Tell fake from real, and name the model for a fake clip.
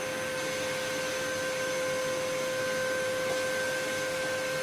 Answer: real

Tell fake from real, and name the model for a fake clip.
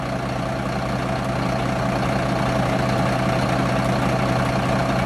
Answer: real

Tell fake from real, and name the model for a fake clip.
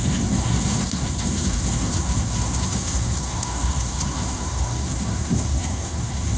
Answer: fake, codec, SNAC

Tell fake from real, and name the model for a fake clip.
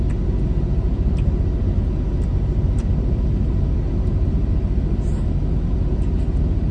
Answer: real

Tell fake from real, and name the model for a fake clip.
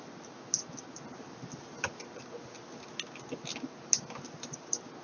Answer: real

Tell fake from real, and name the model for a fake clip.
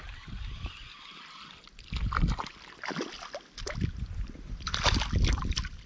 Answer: real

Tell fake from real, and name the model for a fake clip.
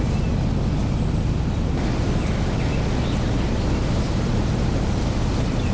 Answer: real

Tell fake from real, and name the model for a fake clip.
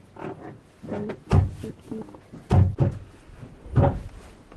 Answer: real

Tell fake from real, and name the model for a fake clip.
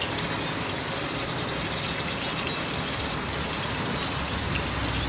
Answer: real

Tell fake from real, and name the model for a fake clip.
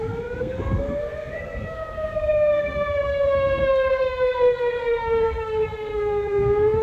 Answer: fake, codec, SNAC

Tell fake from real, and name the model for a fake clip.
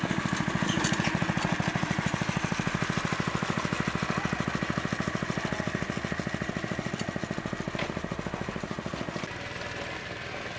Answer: real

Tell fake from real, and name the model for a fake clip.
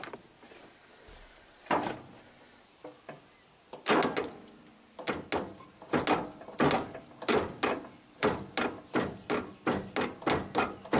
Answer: real